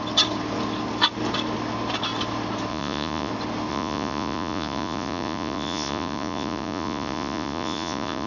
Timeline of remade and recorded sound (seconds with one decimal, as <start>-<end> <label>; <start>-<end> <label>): 0.0-2.7 recorded; 2.7-3.3 remade; 3.3-3.7 recorded; 3.7-8.3 remade